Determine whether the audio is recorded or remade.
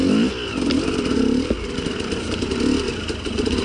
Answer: recorded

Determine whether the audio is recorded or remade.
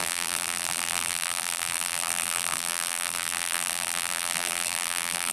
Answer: remade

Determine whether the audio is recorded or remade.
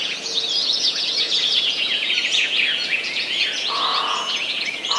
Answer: remade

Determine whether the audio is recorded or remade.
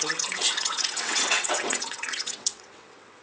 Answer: remade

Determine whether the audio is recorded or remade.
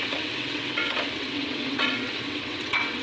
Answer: remade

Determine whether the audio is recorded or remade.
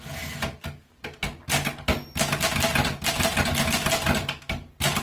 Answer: recorded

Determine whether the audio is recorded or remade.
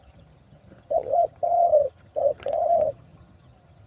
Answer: remade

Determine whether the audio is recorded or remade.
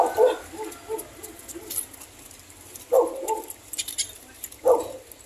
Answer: recorded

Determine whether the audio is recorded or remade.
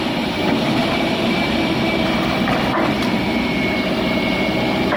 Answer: recorded